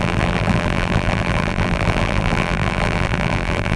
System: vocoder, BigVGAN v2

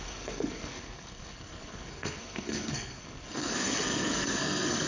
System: codec, SNAC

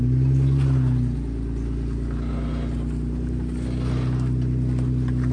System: none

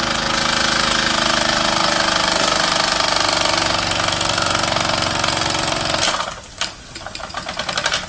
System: none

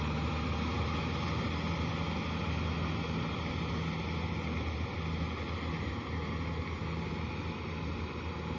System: none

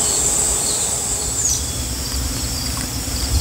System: vocoder, BigVGAN v2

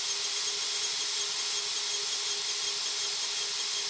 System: none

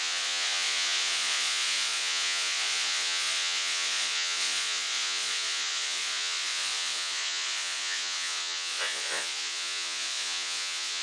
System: vocoder, Vocos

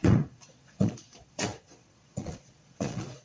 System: vocoder, Vocos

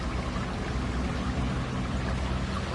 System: none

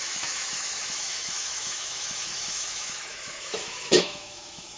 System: autoencoder, DAC-VAE